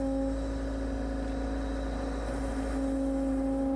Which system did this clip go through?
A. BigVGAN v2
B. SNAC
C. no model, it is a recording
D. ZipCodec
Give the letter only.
C